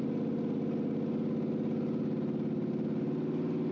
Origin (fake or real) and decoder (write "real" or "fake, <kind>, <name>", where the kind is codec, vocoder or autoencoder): real